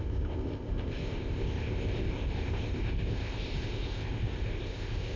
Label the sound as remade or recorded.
remade